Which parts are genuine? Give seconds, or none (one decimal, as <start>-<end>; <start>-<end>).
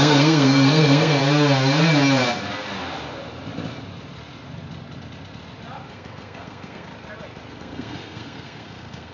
1.2-5.9; 6.9-7.5